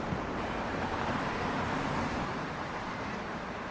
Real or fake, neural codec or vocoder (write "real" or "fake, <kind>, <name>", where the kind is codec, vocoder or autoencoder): fake, vocoder, BigVGAN v2